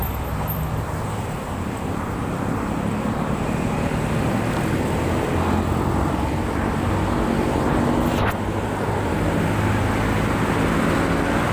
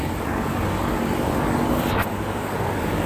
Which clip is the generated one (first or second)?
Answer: second